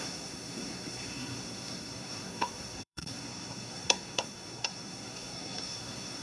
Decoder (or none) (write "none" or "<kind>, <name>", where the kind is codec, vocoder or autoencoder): codec, SNAC